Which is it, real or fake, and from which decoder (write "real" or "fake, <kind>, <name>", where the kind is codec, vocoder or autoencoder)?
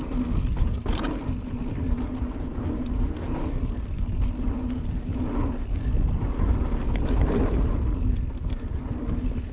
real